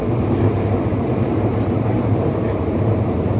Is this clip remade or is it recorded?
remade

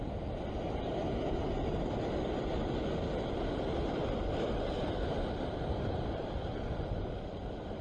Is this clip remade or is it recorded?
recorded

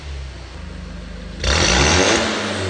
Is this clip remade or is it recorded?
recorded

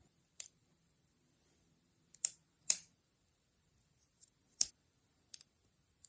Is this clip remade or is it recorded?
remade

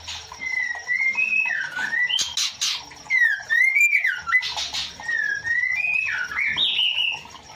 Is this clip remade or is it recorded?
recorded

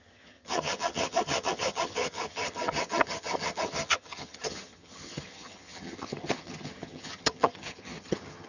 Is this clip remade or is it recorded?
remade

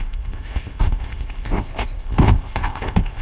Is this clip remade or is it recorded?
remade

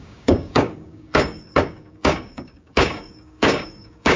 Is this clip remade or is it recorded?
remade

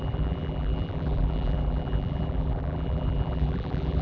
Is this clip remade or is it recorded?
remade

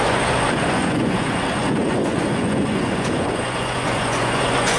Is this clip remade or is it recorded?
remade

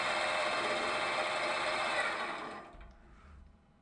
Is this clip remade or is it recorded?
remade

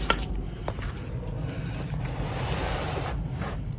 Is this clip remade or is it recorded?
remade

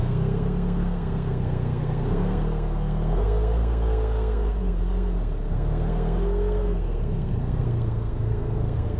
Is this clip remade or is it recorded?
remade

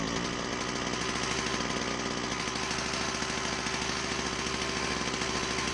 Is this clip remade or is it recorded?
recorded